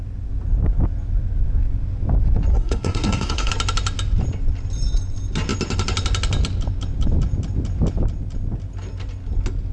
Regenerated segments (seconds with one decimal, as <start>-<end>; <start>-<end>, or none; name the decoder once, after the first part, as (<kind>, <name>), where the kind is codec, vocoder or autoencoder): 2.5-3.5 (codec, SNAC)